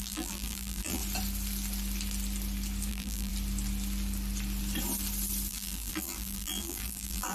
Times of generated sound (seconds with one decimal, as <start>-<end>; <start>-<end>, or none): 0.0-1.0; 2.9-3.3; 5.5-7.3